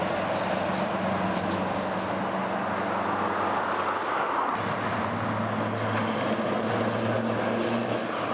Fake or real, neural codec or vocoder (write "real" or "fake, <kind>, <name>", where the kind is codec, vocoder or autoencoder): real